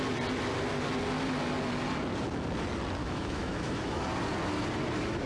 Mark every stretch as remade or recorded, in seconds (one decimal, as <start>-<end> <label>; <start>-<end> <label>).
0.0-3.0 recorded; 3.0-4.0 remade; 4.0-5.3 recorded